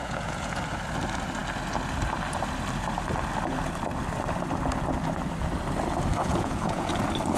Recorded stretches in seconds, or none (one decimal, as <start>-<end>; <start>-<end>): 0.6-6.2; 6.9-7.4